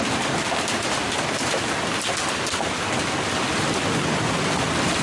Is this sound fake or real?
real